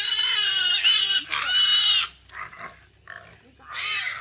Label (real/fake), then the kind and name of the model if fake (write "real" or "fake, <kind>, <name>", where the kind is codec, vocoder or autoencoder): real